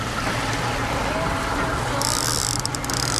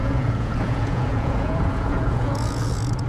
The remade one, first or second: second